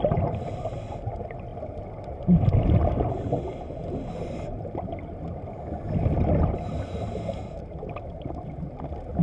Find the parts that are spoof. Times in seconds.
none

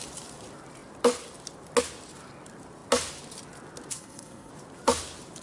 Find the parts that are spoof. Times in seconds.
3.9-4.5 (codec, SNAC)

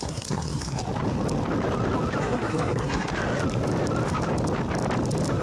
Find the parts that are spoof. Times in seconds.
0.0-0.8 (codec, SNAC); 2.2-3.1

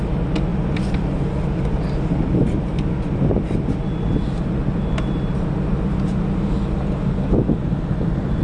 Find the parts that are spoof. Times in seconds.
none

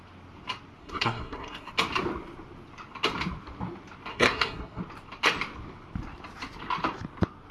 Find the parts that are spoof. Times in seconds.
0.8-1.7 (codec, SNAC); 4.1-4.8

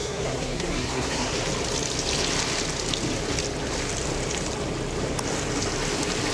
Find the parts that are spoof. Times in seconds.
0.0-1.3 (codec, SNAC)

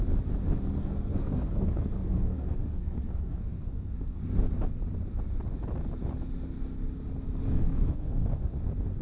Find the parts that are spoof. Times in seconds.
0.8-4.2 (codec, SNAC); 7.6-8.6